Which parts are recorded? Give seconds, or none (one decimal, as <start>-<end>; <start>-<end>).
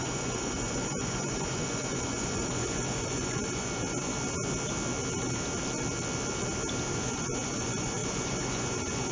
4.1-6.9